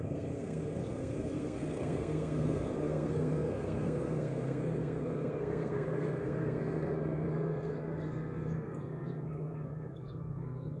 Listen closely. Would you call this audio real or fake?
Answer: fake